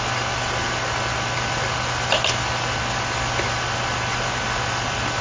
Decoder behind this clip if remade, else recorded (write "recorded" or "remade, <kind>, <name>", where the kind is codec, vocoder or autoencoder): recorded